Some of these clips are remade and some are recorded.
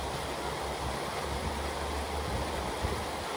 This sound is recorded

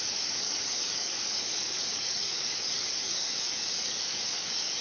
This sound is remade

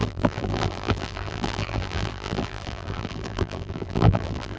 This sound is remade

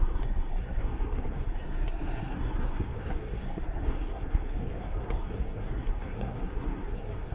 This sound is remade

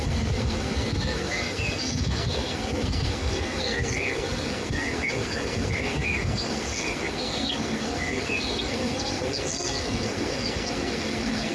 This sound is remade